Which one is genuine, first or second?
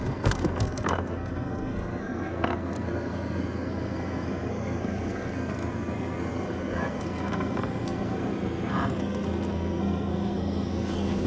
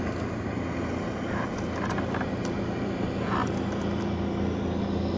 second